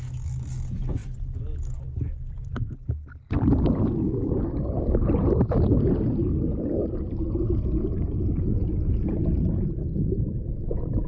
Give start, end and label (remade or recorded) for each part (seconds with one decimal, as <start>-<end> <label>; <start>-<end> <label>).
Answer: 0.0-11.1 recorded